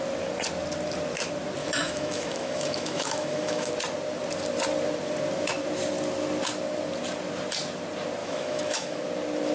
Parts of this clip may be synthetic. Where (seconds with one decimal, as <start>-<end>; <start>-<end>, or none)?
1.6-3.7; 8.2-9.0